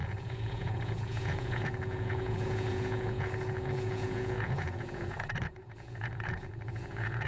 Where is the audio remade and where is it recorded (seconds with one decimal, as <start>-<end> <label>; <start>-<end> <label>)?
0.0-7.3 remade